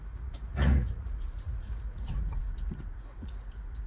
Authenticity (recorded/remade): remade